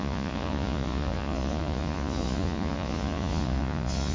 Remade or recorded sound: remade